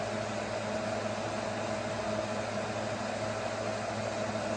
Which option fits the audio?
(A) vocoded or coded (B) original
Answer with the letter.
B